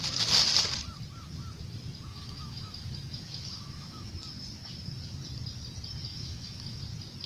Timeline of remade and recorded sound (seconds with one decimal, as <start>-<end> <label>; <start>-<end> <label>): 0.0-2.1 recorded; 2.1-4.1 remade; 4.1-6.1 recorded; 6.1-6.8 remade; 6.8-7.3 recorded